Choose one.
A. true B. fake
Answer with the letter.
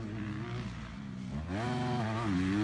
A